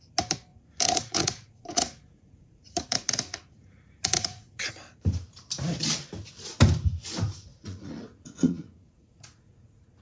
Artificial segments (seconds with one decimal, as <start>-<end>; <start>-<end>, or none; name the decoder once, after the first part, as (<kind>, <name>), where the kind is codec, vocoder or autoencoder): 0.5-4.7 (vocoder, Vocos); 7.5-10.0